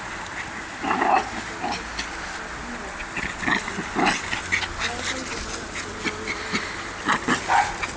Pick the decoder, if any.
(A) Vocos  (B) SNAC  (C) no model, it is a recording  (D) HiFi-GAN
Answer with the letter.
C